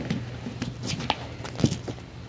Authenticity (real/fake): real